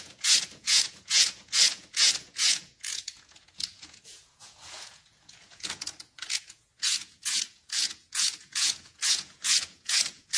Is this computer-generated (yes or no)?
yes